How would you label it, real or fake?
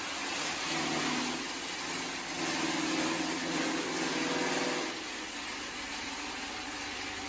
real